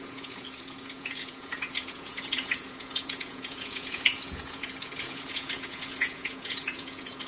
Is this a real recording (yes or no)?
no